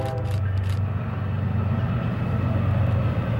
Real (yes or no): yes